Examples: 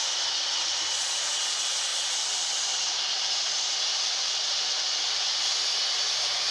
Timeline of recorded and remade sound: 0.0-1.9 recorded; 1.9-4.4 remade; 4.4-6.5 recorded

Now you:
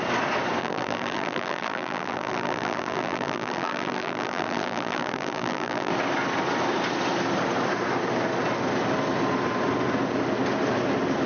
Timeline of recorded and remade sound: 0.0-0.6 recorded; 0.6-5.9 remade; 5.9-11.3 recorded

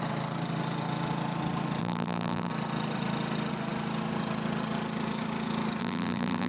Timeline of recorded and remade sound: 0.0-1.8 recorded; 1.8-2.5 remade; 2.5-5.8 recorded; 5.8-6.5 remade

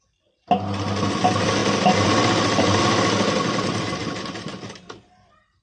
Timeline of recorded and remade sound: 0.0-5.6 recorded

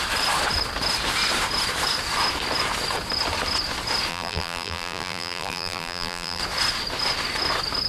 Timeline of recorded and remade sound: 0.0-4.1 recorded; 4.1-6.4 remade; 6.4-7.9 recorded

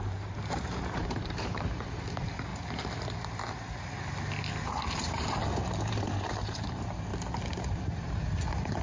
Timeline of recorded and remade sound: 0.0-2.5 remade; 2.5-4.8 recorded; 4.8-5.4 remade; 5.4-5.9 recorded; 5.9-7.1 remade; 7.1-7.6 recorded; 7.6-8.8 remade

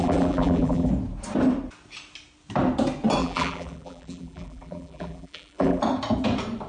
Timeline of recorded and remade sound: 0.0-0.9 remade; 0.9-3.2 recorded; 3.2-5.8 remade; 5.8-6.7 recorded